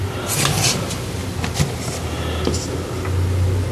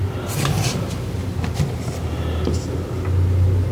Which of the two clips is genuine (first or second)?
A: first